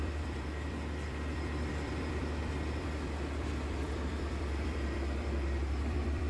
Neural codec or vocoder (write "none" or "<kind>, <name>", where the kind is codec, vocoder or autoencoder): vocoder, BigVGAN v2